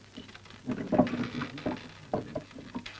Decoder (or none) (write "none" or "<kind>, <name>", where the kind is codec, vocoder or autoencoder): none